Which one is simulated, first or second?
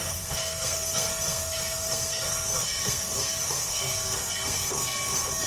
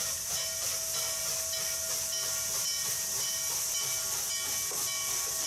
first